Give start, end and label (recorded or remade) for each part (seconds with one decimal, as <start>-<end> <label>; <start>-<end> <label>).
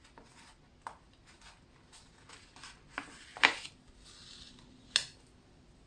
0.0-5.9 recorded